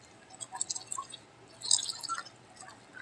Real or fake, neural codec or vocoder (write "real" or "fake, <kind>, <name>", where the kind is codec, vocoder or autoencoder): real